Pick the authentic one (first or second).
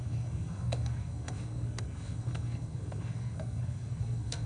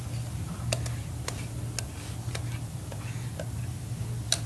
second